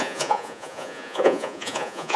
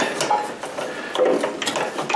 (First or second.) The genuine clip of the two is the second